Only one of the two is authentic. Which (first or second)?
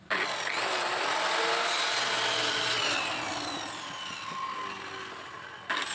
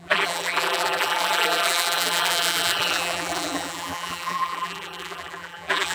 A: first